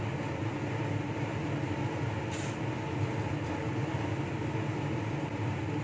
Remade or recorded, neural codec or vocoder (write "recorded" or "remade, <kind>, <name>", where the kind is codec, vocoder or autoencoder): recorded